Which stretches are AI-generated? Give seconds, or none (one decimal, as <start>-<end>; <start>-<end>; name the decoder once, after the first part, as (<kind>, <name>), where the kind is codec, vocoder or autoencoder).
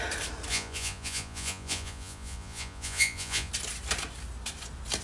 0.5-3.5 (vocoder, Vocos)